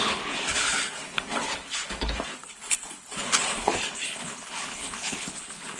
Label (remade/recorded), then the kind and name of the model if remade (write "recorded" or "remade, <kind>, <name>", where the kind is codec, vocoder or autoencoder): remade, codec, HILCodec